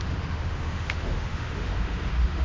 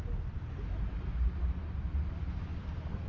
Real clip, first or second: second